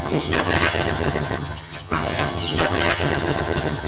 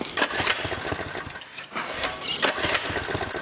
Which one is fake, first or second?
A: first